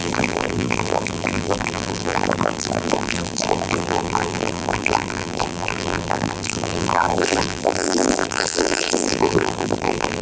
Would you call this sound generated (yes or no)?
yes